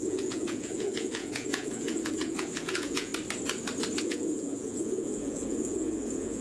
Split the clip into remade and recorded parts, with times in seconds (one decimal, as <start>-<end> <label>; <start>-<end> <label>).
0.0-3.1 remade; 3.1-4.0 recorded; 4.0-6.4 remade